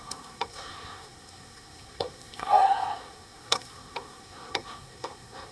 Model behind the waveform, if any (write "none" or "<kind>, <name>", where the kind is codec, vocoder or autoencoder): codec, SNAC